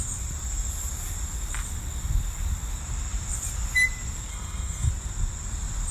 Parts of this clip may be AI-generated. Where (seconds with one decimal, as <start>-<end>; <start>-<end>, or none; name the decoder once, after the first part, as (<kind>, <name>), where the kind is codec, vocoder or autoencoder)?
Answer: 4.3-4.9 (codec, SNAC)